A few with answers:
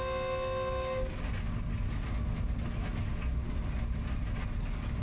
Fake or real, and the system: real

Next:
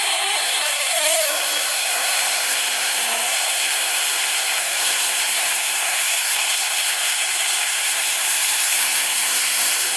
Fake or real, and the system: fake, codec, SNAC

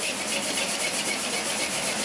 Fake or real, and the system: real